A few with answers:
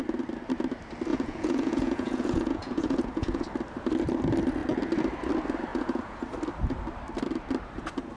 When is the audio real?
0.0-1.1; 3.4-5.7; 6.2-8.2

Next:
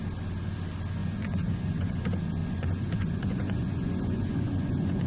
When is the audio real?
0.0-1.0; 2.0-2.4